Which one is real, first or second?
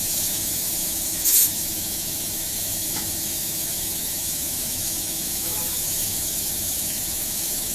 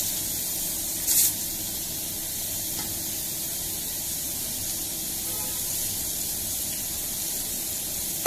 second